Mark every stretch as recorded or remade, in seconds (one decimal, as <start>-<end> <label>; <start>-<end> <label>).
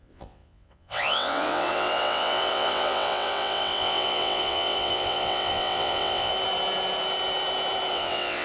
0.0-6.3 remade; 6.3-7.9 recorded; 7.9-8.4 remade